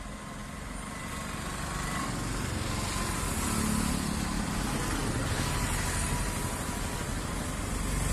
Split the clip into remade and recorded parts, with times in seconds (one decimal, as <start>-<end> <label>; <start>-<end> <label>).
0.0-8.1 recorded